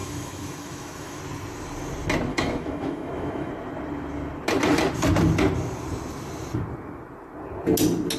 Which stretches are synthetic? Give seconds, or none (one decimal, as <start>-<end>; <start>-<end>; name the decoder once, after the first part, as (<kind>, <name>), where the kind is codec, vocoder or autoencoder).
0.0-1.2 (autoencoder, DAC-VAE); 2.3-3.5